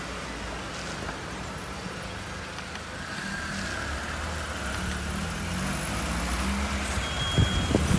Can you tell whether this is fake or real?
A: real